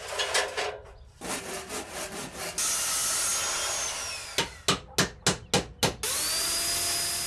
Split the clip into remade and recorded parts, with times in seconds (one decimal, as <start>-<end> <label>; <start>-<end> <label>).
0.0-7.3 recorded